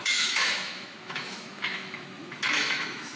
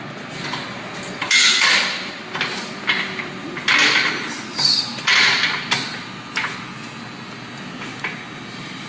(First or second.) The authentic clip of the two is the second